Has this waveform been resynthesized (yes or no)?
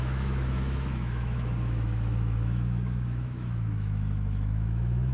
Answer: yes